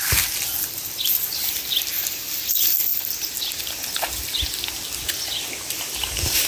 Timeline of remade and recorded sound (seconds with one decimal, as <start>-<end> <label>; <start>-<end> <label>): 0.0-6.5 recorded